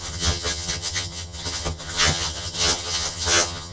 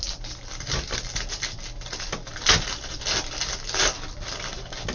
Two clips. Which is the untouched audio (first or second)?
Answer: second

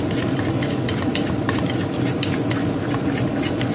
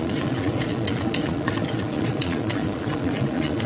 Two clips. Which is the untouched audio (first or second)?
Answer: first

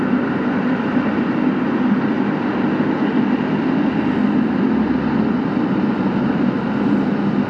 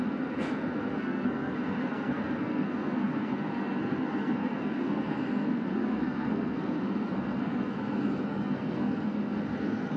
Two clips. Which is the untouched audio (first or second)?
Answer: first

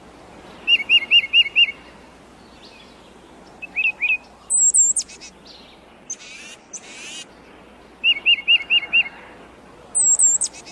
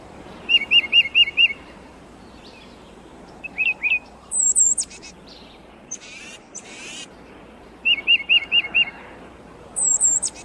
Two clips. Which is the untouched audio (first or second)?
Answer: first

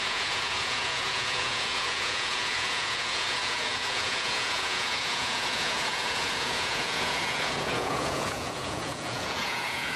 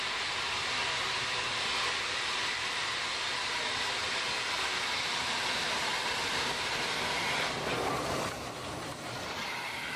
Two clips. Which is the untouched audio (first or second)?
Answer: second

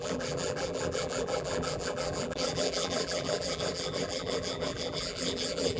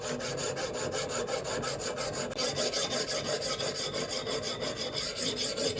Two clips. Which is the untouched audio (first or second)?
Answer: second